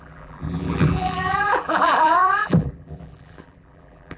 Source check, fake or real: fake